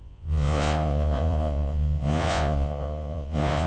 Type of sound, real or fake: fake